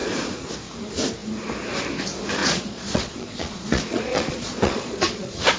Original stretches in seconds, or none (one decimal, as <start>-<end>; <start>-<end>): 0.5-2.4